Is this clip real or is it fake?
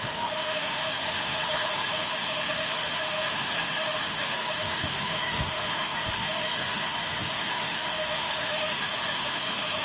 fake